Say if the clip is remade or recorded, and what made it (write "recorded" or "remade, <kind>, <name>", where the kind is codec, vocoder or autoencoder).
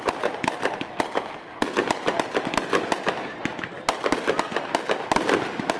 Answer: recorded